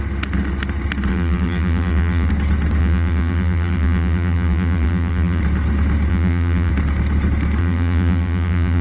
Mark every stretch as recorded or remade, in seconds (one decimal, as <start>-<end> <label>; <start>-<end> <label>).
0.0-1.1 recorded; 1.1-2.3 remade; 2.3-2.8 recorded; 2.8-5.4 remade; 5.4-6.1 recorded; 6.1-6.7 remade; 6.7-7.6 recorded; 7.6-8.8 remade